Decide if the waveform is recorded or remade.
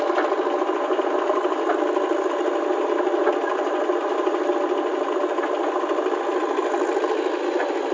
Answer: recorded